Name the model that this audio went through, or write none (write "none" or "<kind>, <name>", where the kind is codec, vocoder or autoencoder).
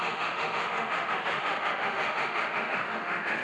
autoencoder, DAC-VAE